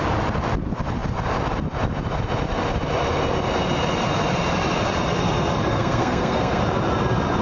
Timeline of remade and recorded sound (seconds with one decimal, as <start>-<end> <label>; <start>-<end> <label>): 0.0-5.7 recorded; 5.7-6.6 remade; 6.6-7.4 recorded